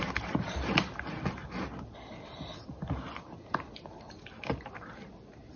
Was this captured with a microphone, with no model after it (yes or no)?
yes